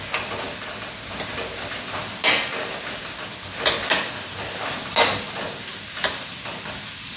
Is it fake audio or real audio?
real